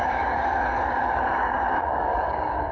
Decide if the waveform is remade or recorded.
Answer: remade